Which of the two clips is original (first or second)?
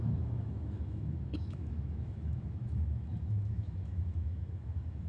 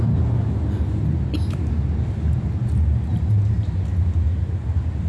second